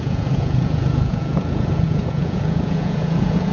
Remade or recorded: remade